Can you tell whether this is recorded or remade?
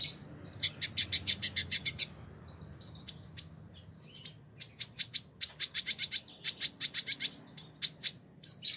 recorded